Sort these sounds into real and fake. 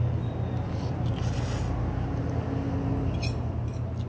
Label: real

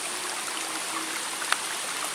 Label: real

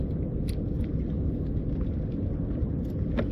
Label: real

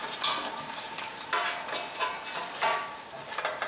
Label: real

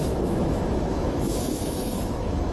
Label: fake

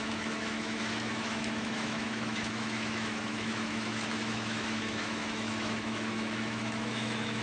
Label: fake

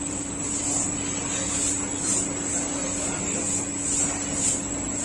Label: real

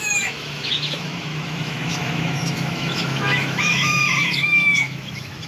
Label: fake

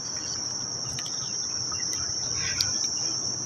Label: real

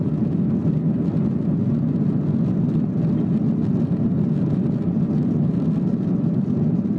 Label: real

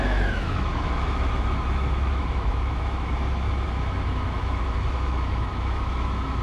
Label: fake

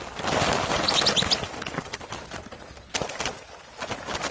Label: real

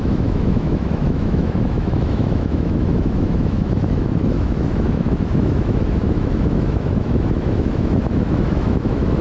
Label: fake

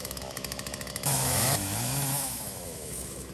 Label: fake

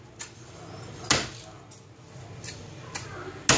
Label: real